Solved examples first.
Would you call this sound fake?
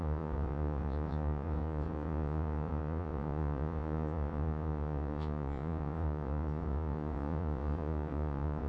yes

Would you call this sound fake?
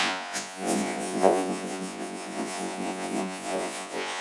yes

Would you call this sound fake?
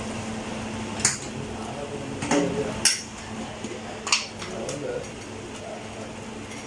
no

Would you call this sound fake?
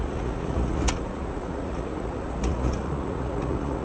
yes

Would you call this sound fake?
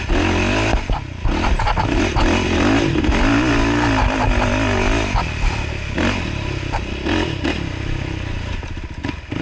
no